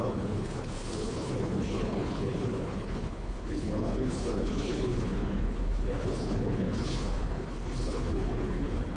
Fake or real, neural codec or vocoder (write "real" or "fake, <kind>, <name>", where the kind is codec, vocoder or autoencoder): fake, codec, HILCodec